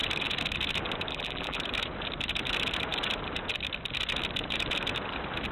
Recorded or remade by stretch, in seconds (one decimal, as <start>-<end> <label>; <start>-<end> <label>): 0.0-1.1 recorded; 1.1-1.6 remade; 1.6-5.5 recorded